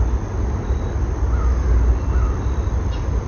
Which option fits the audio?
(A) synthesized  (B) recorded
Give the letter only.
B